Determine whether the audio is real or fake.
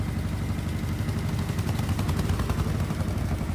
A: real